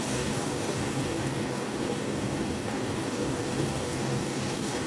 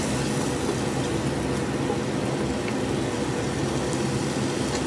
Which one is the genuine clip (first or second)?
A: second